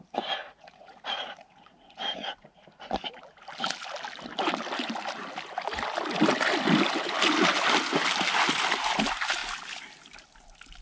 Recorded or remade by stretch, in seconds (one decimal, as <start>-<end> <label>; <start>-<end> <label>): 0.0-0.4 recorded; 0.4-2.6 remade; 2.6-10.8 recorded

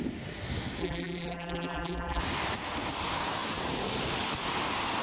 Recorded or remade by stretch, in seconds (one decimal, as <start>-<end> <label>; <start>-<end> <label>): 0.0-0.8 recorded; 0.8-2.2 remade; 2.2-5.0 recorded

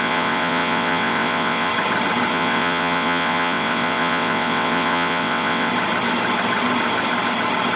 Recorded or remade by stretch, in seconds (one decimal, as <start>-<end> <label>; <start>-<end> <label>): 0.0-1.7 remade; 1.7-2.3 recorded; 2.3-5.7 remade; 5.7-7.8 recorded

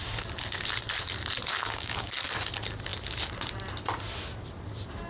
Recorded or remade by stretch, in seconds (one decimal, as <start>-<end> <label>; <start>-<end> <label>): 0.0-1.5 recorded; 1.5-2.1 remade; 2.1-5.1 recorded

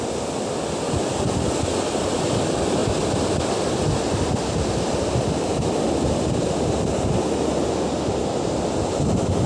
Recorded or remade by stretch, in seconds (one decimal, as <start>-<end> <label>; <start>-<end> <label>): 0.0-9.5 recorded

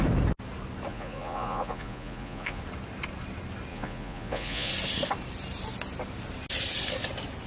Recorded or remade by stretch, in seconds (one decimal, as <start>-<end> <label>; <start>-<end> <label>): 0.0-0.9 recorded; 0.9-2.6 remade; 2.6-3.7 recorded; 3.7-4.7 remade; 4.7-7.5 recorded